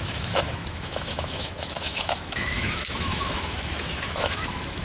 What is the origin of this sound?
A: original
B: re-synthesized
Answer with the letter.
B